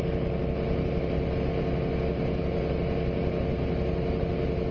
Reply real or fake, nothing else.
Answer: real